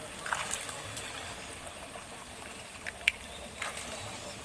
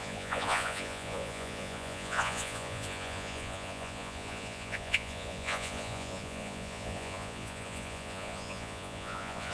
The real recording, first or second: first